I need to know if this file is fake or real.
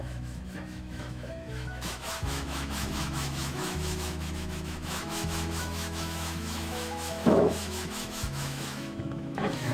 fake